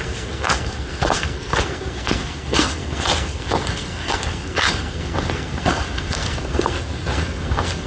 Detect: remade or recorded remade